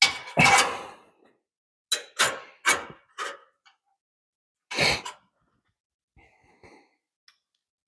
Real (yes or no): yes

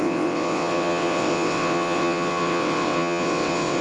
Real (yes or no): no